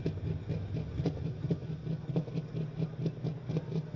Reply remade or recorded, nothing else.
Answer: recorded